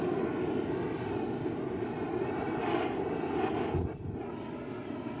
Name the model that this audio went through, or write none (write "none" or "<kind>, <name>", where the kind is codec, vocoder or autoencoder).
none